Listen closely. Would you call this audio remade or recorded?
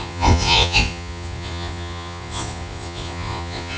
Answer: remade